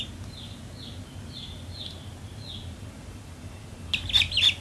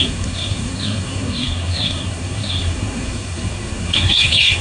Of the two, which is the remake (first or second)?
second